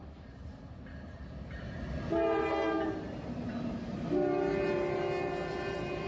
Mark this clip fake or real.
real